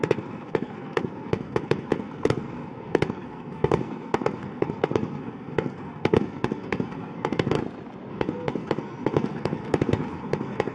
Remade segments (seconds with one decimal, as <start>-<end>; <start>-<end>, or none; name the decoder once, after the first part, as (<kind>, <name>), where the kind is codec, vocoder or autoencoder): 0.0-7.6 (codec, SNAC); 8.1-10.7